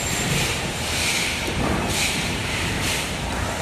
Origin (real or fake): fake